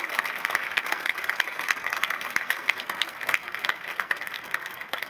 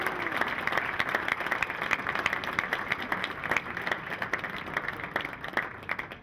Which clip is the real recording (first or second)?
second